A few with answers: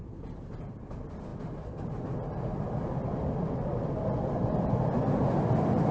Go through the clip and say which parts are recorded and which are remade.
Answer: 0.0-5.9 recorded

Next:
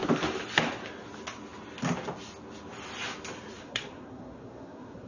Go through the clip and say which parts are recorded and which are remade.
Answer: 0.0-3.6 recorded; 3.6-5.1 remade